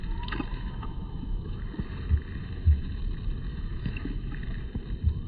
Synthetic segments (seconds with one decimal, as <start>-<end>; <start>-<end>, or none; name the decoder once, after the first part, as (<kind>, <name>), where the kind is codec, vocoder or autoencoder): 0.5-1.6 (autoencoder, DAC-VAE); 2.4-3.0; 3.5-4.3